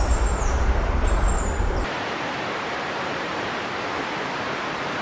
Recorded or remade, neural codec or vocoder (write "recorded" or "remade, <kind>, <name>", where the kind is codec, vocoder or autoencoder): remade, vocoder, BigVGAN v2